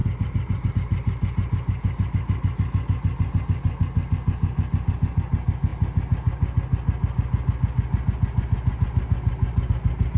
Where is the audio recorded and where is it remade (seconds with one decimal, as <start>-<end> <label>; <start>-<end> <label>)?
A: 0.0-0.7 remade; 0.7-10.2 recorded